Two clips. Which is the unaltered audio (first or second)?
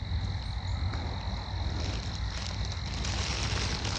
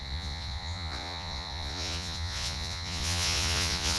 first